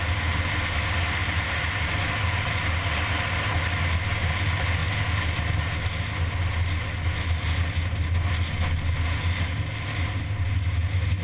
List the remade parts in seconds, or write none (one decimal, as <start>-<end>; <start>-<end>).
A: 1.2-1.9